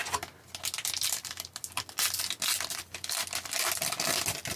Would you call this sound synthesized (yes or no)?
no